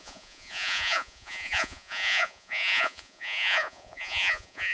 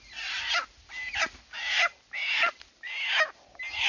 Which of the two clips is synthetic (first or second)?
first